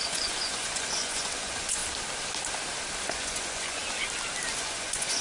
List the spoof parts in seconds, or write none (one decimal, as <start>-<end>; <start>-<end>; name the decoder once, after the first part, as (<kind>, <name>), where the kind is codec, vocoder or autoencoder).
0.0-1.8 (vocoder, Vocos); 3.1-3.8; 4.5-5.2